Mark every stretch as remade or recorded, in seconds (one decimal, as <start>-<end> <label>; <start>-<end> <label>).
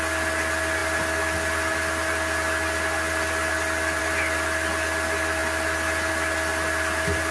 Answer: 0.0-7.3 recorded